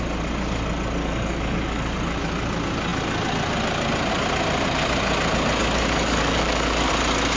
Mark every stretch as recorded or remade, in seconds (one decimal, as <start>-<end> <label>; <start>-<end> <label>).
0.0-1.0 recorded; 1.0-2.0 remade; 2.0-5.6 recorded; 5.6-6.9 remade; 6.9-7.4 recorded